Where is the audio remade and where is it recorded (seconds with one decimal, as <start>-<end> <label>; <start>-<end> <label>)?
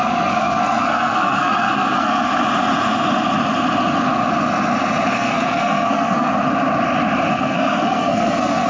0.0-2.3 remade; 2.3-5.1 recorded; 5.1-6.3 remade; 6.3-7.3 recorded; 7.3-8.7 remade